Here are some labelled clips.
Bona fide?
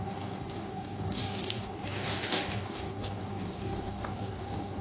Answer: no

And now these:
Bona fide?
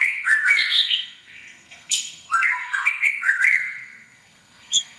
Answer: no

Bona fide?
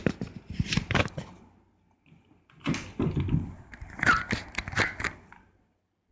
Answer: yes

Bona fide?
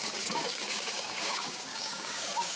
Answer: no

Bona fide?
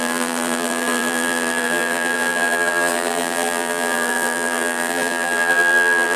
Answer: no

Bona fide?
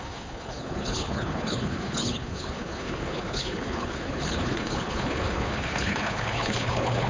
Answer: no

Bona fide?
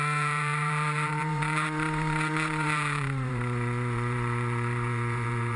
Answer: no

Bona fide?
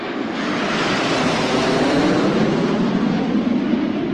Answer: yes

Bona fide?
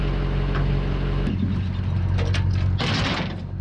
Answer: yes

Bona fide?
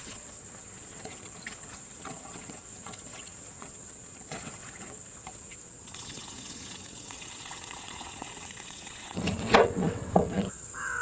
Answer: no